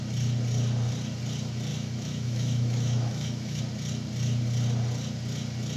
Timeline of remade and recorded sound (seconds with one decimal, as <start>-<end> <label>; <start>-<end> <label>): 0.0-1.7 recorded; 1.7-3.6 remade; 3.6-5.8 recorded